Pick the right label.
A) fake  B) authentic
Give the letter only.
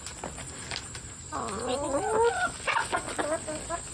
B